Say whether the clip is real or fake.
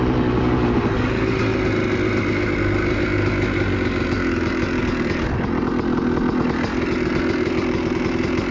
real